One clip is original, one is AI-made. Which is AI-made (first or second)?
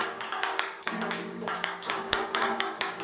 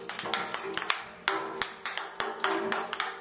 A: first